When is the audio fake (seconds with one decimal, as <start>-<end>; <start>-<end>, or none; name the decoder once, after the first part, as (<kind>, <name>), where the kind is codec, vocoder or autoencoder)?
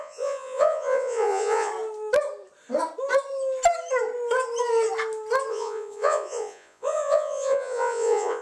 0.0-1.7 (vocoder, Vocos); 5.5-8.4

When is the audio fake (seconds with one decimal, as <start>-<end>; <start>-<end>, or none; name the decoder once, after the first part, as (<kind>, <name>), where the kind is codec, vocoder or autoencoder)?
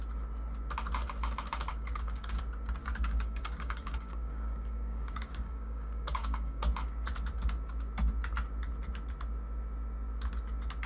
1.7-2.4 (codec, DAC); 2.8-6.6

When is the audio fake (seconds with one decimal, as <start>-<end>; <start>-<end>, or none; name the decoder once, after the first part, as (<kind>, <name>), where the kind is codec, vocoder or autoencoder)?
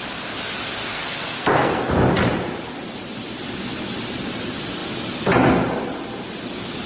0.9-1.8 (codec, SNAC)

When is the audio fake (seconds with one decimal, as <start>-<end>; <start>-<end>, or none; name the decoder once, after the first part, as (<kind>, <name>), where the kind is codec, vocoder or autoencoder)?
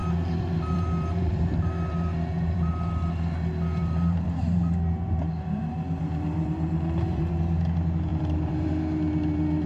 0.0-2.7 (vocoder, BigVGAN v2); 3.8-7.3; 8.1-8.7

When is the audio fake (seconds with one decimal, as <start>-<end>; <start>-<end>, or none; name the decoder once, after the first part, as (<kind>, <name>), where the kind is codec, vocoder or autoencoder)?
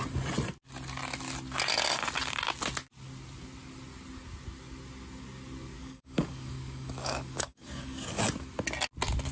5.8-8.2 (codec, DAC)